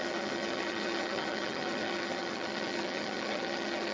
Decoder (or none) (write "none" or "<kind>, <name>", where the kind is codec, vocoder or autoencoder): vocoder, HiFi-GAN